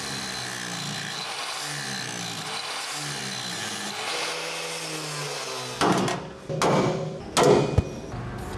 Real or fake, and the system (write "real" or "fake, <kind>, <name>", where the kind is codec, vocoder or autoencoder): real